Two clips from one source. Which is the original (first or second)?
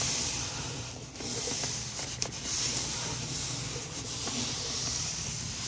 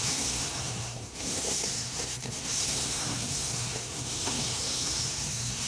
first